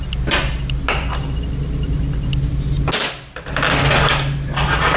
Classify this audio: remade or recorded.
recorded